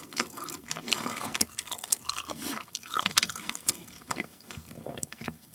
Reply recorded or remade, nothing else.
remade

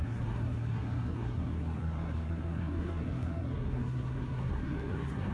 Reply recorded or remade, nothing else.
remade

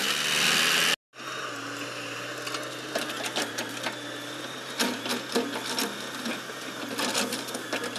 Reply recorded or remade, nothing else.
recorded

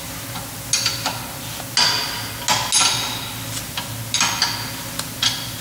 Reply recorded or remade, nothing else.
recorded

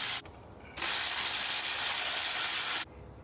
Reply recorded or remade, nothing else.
recorded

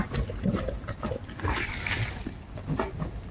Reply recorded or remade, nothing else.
recorded